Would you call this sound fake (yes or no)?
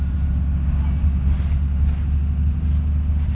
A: no